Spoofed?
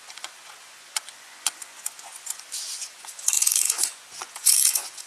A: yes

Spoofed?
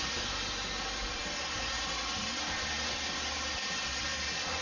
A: no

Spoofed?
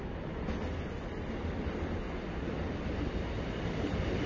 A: no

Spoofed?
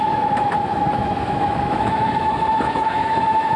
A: yes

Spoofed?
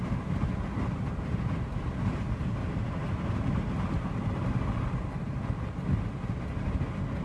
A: no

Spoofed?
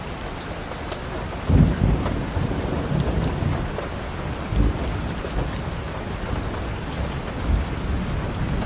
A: no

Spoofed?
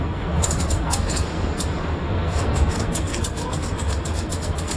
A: yes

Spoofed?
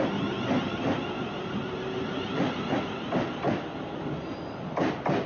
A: no